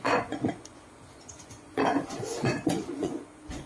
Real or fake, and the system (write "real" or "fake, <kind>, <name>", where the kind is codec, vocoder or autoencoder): fake, vocoder, Vocos